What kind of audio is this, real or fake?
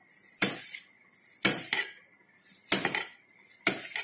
real